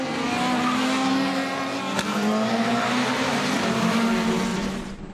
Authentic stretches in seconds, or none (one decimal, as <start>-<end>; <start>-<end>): 0.0-4.5